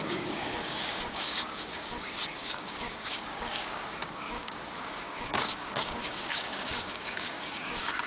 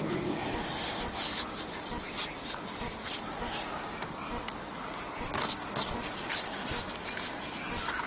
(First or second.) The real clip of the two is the second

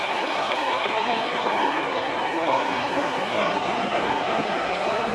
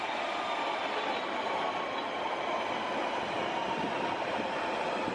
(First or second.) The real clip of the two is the second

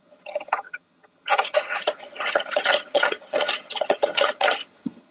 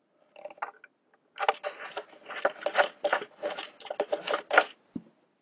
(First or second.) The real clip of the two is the second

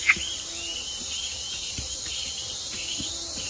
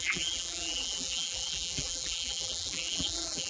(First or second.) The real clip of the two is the first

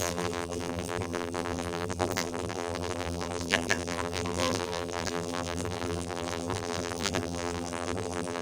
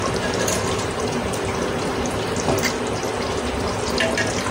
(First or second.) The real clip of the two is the second